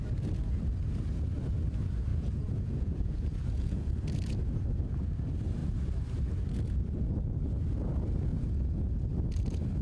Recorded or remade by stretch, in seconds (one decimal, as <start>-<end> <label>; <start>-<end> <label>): 0.0-2.1 recorded; 2.1-3.9 remade; 3.9-8.3 recorded; 8.3-8.9 remade; 8.9-9.8 recorded

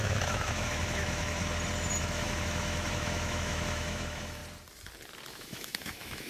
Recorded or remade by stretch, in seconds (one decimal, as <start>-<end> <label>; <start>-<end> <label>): 0.0-1.4 remade; 1.4-2.0 recorded; 2.0-4.4 remade; 4.4-5.3 recorded; 5.3-6.3 remade

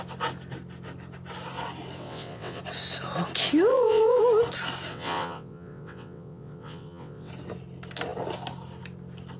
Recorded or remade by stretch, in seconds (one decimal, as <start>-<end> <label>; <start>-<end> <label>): 0.0-2.0 recorded; 2.0-2.6 remade; 2.6-3.7 recorded; 3.7-4.2 remade; 4.2-4.9 recorded; 4.9-7.3 remade; 7.3-9.4 recorded

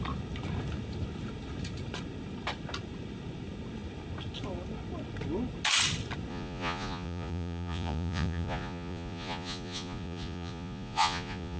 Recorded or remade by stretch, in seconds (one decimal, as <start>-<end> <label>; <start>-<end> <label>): 0.0-6.3 recorded; 6.3-11.6 remade

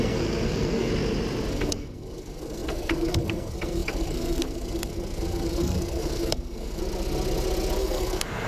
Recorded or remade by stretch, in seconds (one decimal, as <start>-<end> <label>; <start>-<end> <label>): 0.0-0.9 remade; 0.9-1.5 recorded; 1.5-6.8 remade; 6.8-7.8 recorded; 7.8-8.5 remade